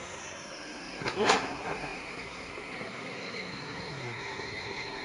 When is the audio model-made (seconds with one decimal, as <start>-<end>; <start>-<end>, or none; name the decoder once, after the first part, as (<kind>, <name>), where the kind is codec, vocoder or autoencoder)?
0.0-5.0 (codec, SNAC)